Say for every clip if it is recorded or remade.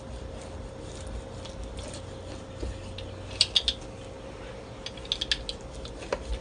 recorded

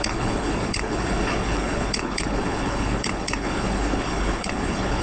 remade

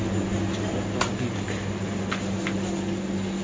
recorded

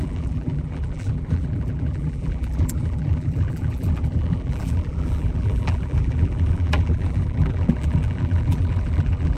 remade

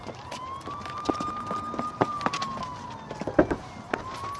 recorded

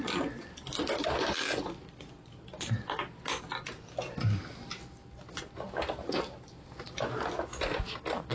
recorded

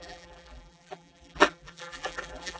remade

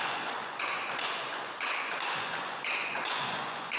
remade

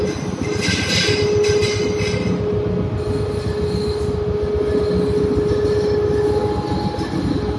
recorded